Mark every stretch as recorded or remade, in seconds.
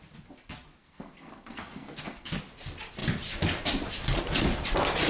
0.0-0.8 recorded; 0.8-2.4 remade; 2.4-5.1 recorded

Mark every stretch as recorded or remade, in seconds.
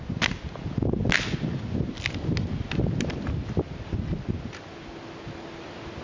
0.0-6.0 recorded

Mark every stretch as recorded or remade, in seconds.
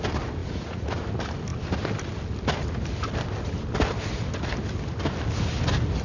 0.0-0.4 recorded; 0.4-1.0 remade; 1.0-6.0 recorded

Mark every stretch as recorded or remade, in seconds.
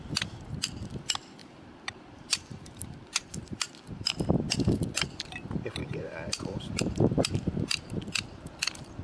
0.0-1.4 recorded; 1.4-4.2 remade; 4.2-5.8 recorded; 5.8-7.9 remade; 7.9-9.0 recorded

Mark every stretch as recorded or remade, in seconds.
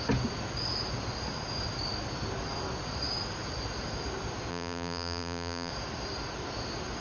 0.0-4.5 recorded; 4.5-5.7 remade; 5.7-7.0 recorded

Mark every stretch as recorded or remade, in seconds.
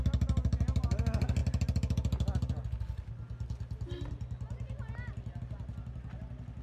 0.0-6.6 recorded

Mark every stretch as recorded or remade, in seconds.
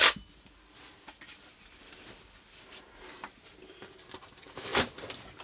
0.0-4.7 remade; 4.7-5.4 recorded